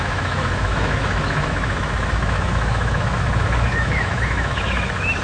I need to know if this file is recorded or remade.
remade